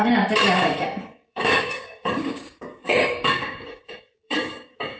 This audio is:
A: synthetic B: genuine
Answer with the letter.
A